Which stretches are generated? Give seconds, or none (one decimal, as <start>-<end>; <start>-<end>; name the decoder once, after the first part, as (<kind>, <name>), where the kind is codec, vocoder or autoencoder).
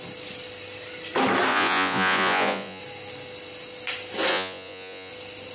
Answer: 1.5-2.8 (vocoder, Vocos); 4.3-5.1